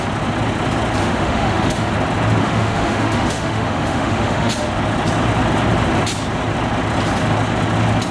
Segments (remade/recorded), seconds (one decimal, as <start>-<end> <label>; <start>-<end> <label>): 0.0-1.0 recorded; 1.0-1.9 remade; 1.9-2.4 recorded; 2.4-4.5 remade; 4.5-8.1 recorded